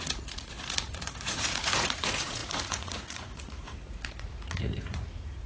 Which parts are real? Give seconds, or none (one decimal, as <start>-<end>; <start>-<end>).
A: none